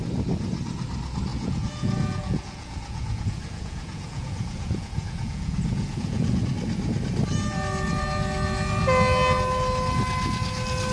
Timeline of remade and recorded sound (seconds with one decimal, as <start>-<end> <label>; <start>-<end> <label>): 0.0-1.3 recorded; 1.3-6.4 remade; 6.4-10.9 recorded